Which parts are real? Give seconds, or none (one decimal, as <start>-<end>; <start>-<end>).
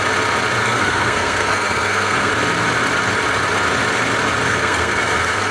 0.0-0.6; 2.3-4.5